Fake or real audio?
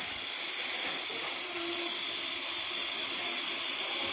real